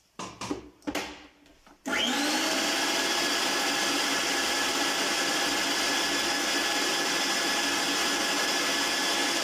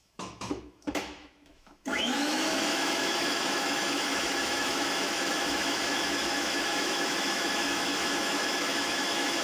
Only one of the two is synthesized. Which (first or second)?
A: second